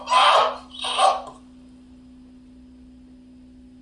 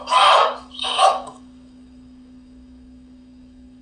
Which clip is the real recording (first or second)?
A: first